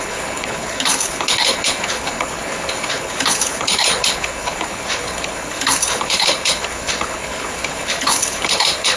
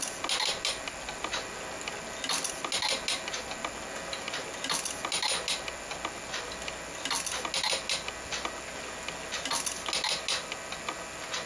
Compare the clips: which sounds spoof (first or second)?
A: first